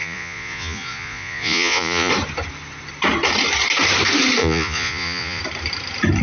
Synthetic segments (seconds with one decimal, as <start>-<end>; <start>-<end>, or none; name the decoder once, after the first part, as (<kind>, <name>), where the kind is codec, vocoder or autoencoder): 0.0-2.1 (vocoder, Vocos); 4.4-5.4